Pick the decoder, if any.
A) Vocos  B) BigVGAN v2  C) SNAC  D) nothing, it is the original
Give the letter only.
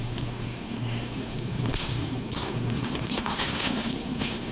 C